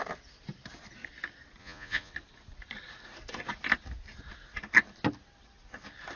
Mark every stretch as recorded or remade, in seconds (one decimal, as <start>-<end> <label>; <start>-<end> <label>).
0.0-1.6 recorded; 1.6-2.1 remade; 2.1-6.2 recorded